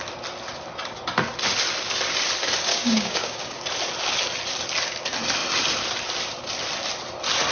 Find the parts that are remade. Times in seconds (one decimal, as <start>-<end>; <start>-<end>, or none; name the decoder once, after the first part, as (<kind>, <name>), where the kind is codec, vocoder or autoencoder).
2.7-3.6 (codec, DAC)

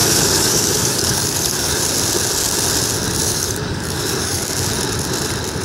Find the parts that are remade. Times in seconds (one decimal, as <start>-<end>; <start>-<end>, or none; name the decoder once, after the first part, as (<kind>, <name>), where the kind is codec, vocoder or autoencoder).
0.0-1.8 (codec, DAC); 3.2-4.4

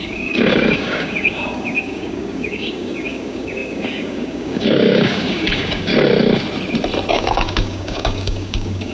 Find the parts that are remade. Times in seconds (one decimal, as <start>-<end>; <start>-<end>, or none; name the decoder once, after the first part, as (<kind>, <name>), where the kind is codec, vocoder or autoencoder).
0.0-5.9 (codec, DAC); 7.1-8.9

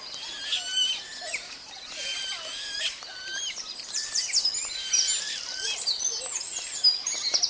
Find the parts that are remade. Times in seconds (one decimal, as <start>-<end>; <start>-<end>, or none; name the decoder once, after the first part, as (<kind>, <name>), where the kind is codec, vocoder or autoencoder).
none

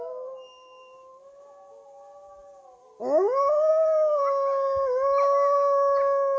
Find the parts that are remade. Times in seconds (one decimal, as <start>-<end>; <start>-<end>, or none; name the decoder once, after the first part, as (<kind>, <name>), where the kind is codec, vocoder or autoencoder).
none

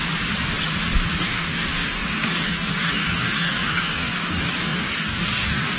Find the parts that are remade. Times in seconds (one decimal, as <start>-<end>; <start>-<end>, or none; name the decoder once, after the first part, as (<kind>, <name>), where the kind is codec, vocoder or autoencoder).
1.2-5.8 (codec, DAC)

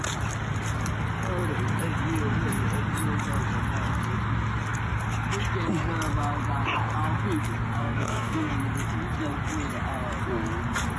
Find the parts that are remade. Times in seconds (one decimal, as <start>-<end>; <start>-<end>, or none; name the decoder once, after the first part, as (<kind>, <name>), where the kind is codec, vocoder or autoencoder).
7.8-8.5 (codec, DAC)